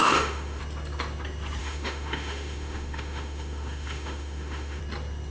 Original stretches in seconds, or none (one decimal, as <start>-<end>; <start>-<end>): 0.6-1.6; 4.8-5.3